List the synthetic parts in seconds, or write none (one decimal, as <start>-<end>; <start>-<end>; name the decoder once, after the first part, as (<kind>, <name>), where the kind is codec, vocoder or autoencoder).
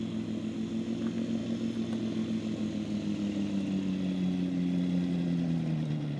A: none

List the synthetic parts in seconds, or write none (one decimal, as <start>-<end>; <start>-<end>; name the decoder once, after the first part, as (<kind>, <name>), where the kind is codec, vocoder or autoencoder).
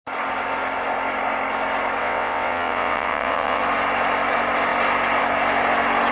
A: 2.0-3.6 (vocoder, WaveNeXt)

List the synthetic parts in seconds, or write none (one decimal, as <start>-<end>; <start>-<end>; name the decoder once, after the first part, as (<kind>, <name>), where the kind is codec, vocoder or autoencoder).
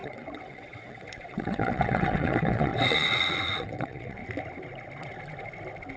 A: 0.0-4.2 (vocoder, WaveNeXt)